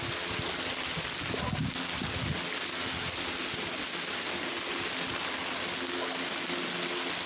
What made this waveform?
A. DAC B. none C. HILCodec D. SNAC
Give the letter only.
B